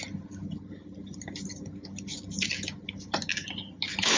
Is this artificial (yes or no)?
no